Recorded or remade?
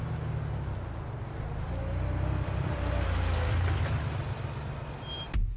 recorded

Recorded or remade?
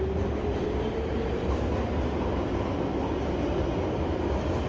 recorded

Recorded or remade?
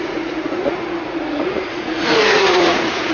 remade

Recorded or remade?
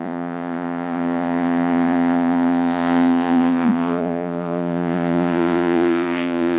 remade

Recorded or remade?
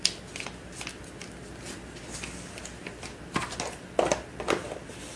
recorded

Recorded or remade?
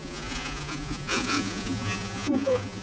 remade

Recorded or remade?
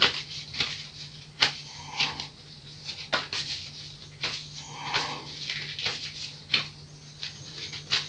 recorded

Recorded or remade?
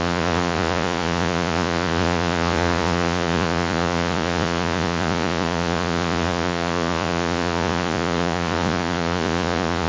remade